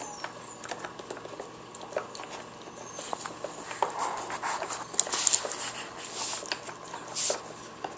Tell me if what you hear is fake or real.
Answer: real